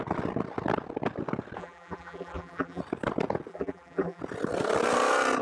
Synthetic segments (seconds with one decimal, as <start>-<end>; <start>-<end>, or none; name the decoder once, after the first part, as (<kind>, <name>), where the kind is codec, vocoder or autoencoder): 1.6-2.8 (vocoder, BigVGAN v2); 3.5-4.2